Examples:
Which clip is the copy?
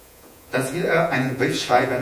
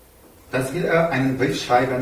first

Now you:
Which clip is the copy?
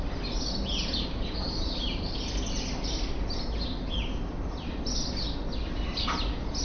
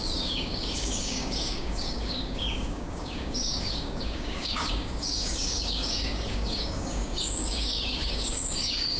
second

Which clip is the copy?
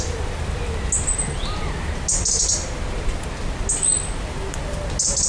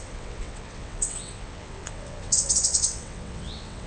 second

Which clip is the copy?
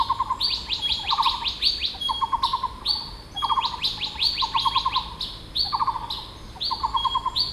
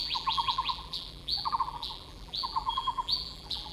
second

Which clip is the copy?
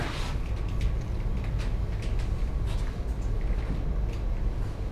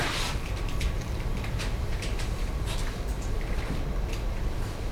second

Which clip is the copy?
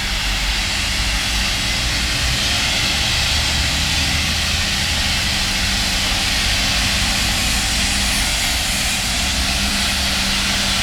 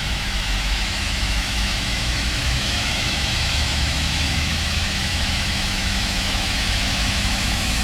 second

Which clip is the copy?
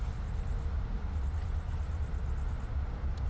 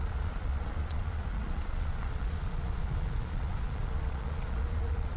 second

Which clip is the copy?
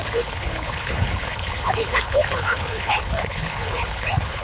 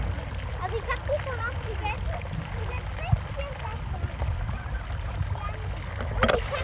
first